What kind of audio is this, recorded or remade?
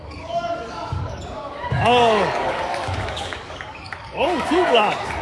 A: remade